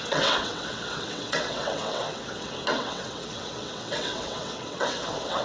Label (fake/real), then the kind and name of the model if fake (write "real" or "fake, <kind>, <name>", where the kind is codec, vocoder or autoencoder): fake, vocoder, WaveNeXt